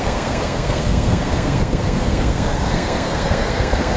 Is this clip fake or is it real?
fake